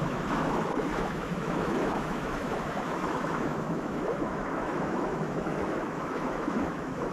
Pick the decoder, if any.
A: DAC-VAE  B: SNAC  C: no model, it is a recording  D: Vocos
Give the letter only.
A